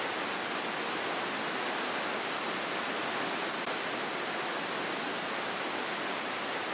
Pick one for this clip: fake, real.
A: real